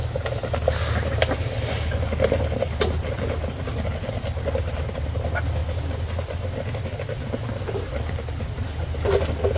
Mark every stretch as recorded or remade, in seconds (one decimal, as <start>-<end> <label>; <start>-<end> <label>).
0.0-9.6 recorded